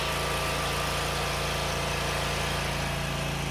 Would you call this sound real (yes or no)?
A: yes